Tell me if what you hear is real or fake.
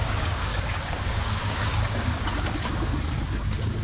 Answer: fake